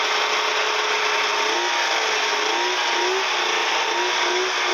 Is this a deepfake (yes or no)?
no